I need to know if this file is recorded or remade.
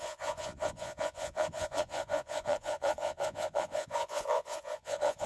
remade